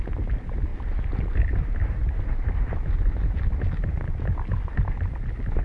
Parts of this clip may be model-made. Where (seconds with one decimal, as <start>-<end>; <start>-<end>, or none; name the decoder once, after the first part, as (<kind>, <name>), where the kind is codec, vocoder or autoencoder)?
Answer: none